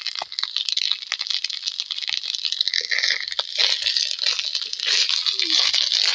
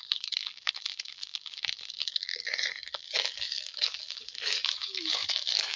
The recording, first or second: first